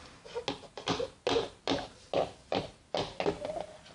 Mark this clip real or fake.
real